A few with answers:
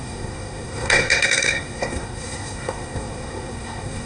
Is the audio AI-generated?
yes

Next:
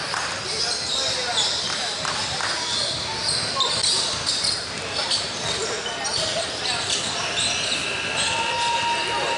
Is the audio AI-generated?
no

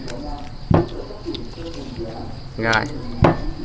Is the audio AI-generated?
no